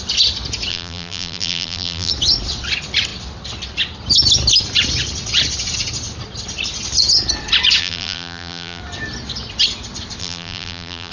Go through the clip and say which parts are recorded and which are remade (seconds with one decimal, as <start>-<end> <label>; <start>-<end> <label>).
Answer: 0.0-0.7 recorded; 0.7-2.1 remade; 2.1-7.8 recorded; 7.8-8.8 remade; 8.8-10.2 recorded; 10.2-11.1 remade